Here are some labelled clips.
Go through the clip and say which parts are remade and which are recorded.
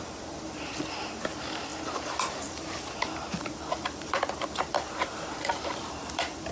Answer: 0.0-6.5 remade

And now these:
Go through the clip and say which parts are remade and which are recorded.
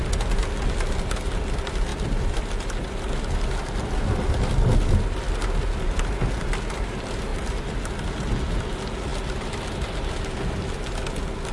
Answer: 0.0-1.9 recorded; 1.9-3.1 remade; 3.1-7.3 recorded; 7.3-7.8 remade; 7.8-11.5 recorded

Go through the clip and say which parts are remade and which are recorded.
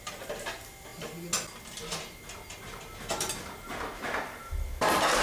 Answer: 0.0-5.2 recorded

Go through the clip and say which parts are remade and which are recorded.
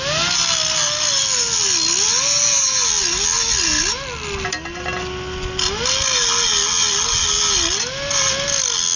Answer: 0.0-9.0 recorded